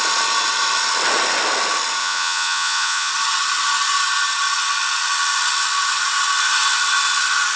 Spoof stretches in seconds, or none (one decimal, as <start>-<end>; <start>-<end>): 2.0-3.1